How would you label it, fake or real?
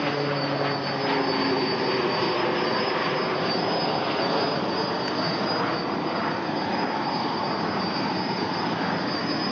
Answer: real